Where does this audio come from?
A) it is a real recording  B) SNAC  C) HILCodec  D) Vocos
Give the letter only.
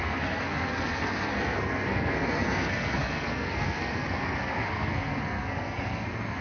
B